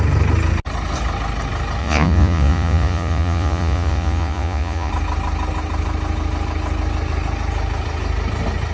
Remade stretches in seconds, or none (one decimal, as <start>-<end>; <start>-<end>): 1.8-4.9